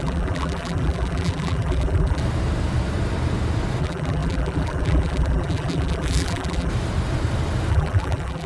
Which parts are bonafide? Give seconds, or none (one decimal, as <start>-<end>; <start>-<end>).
2.2-3.8; 6.7-7.7